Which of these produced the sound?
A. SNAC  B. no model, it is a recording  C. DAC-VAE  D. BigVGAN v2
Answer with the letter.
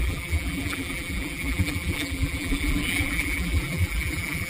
D